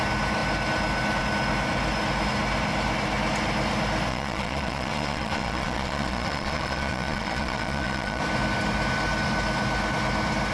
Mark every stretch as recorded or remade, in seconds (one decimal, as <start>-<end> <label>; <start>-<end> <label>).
0.0-4.1 recorded; 4.1-8.2 remade; 8.2-10.5 recorded